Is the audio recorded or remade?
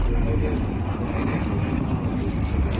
recorded